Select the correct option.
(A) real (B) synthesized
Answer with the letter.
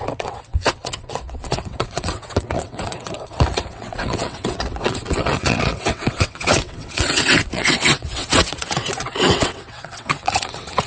B